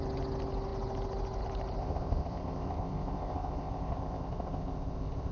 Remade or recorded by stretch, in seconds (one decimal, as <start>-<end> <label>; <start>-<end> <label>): 0.0-1.8 recorded; 1.8-5.3 remade